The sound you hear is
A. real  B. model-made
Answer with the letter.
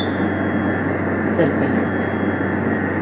A